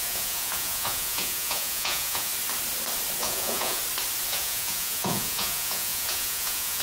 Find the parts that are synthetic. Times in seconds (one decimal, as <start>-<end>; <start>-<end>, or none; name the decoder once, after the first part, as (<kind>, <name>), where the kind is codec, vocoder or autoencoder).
0.0-2.3 (vocoder, Vocos); 3.2-3.8; 4.3-6.8